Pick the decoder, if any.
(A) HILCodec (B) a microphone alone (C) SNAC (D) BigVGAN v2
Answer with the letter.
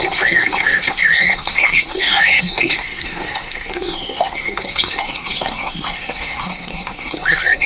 C